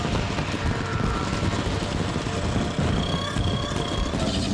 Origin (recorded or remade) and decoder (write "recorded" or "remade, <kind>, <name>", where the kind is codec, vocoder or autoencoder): recorded